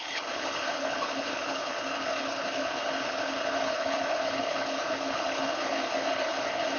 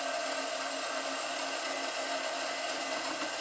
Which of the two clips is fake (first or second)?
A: first